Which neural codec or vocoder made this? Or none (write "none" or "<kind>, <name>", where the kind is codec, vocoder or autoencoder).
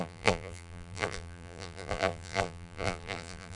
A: vocoder, BigVGAN v2